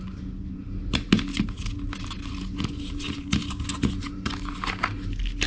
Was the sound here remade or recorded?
recorded